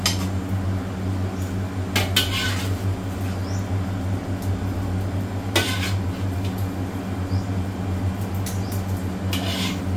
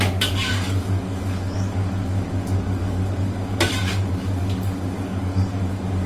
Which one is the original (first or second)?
first